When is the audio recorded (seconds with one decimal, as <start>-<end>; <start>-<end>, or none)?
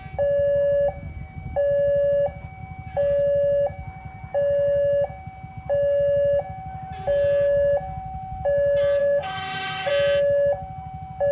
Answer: 0.0-9.0; 9.9-11.3